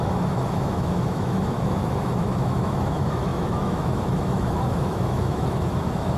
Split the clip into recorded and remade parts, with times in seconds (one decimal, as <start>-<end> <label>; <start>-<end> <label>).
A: 0.0-6.2 remade